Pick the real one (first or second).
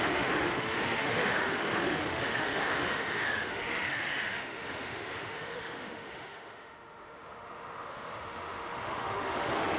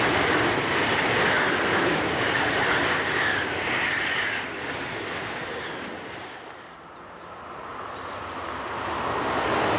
second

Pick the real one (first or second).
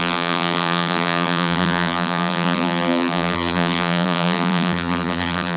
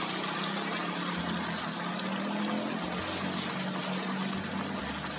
second